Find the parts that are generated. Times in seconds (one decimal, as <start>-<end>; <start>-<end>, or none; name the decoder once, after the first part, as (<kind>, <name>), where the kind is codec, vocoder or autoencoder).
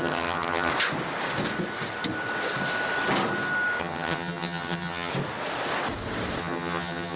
0.0-0.7 (vocoder, HiFi-GAN); 3.8-5.1; 6.4-7.2